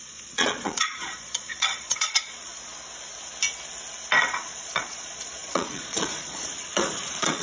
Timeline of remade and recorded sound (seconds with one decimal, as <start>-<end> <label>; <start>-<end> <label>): 0.0-2.5 remade; 2.5-4.2 recorded; 4.2-7.4 remade